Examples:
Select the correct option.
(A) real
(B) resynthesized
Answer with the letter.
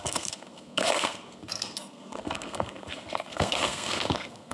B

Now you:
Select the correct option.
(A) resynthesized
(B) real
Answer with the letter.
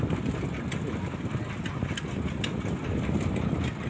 B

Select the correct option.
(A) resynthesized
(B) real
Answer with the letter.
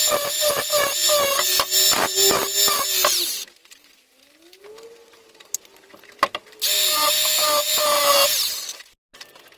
B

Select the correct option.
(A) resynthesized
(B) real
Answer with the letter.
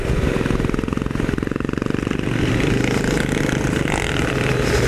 B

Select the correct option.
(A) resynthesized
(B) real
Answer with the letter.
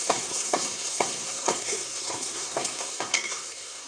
A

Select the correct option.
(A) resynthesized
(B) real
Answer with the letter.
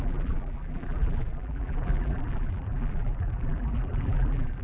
A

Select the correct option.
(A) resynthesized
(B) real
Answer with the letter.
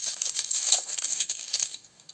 A